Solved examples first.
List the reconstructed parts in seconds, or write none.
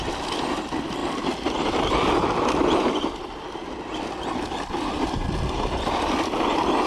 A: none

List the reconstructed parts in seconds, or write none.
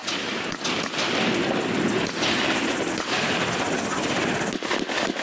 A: none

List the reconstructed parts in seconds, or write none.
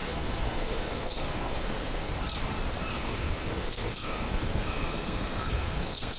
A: 0.0-2.1; 2.9-6.2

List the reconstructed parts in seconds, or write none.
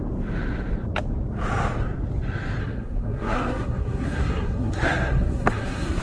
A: 2.6-6.0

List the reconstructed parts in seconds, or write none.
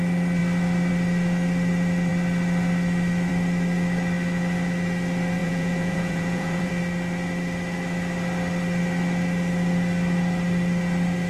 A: 5.4-6.7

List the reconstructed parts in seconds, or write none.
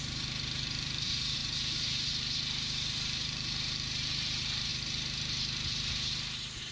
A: 0.0-4.7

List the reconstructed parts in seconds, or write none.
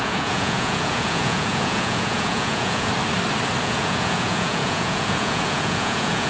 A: 0.0-2.9; 3.6-6.3